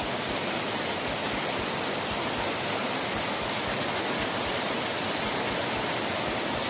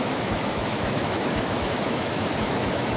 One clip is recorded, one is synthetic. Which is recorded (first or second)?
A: first